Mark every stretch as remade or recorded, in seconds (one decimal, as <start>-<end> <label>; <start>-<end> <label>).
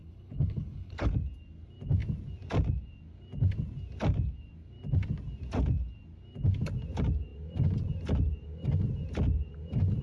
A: 0.0-1.1 remade; 1.1-10.0 recorded